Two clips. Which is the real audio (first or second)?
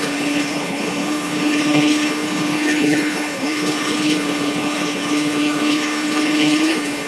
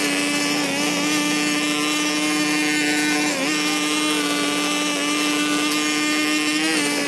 second